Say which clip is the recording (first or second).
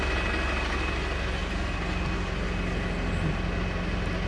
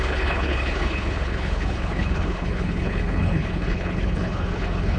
first